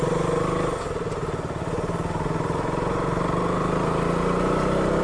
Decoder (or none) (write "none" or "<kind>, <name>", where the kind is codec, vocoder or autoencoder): none